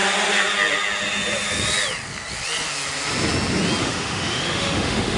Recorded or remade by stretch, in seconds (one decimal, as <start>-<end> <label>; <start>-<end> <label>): 0.0-3.8 recorded; 3.8-5.2 remade